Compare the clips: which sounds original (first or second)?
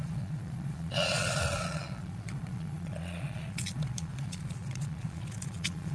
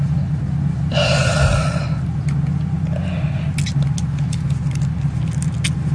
second